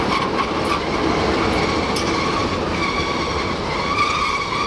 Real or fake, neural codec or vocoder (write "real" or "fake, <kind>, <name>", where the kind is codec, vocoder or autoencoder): real